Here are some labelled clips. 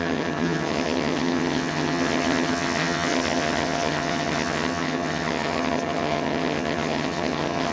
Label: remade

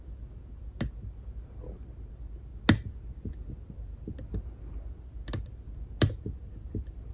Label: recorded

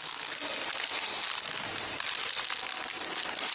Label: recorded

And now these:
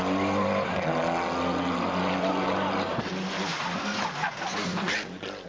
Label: recorded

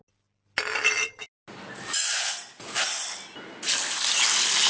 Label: recorded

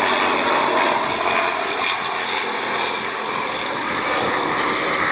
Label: recorded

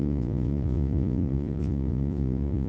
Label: remade